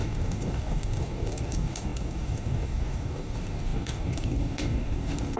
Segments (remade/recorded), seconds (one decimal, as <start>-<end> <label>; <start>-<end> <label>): 0.0-5.4 remade